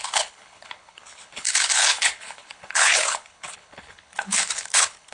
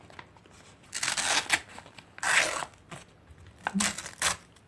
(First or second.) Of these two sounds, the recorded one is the second